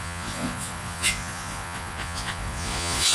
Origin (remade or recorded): remade